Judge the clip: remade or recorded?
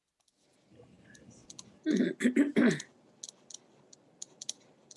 recorded